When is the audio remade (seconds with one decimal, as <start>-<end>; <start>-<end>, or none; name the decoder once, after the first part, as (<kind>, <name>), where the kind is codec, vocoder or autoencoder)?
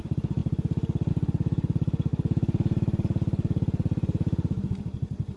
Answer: 0.0-5.4 (vocoder, BigVGAN v2)